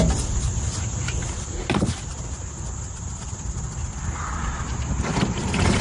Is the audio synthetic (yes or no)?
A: no